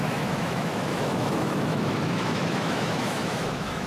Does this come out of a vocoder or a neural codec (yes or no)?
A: yes